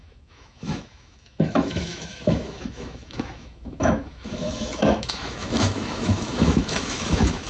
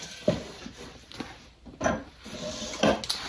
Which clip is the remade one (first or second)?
first